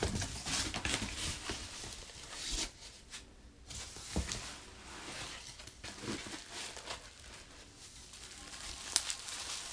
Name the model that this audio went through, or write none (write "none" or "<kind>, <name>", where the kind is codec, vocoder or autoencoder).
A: none